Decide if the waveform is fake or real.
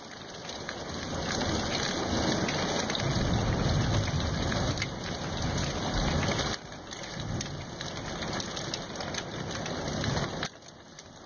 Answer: real